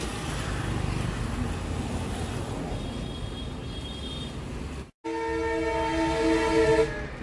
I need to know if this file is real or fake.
real